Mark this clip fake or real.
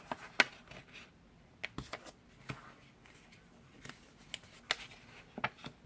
real